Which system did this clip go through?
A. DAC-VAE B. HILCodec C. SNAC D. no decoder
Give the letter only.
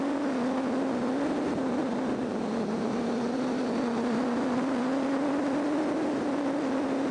D